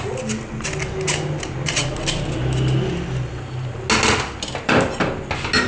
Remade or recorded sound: recorded